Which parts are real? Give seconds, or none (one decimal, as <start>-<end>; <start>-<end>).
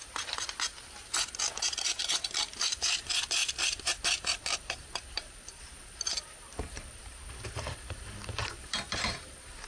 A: 0.0-1.5